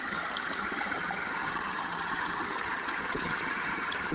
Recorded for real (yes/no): no